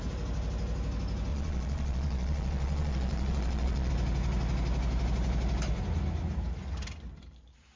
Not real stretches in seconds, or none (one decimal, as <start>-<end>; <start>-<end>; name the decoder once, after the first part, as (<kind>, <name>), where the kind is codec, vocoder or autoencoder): 1.3-3.9 (vocoder, Vocos)